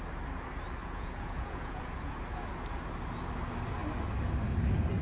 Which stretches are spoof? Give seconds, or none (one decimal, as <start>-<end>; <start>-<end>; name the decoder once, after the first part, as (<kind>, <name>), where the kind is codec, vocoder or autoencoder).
0.8-2.1 (vocoder, Vocos)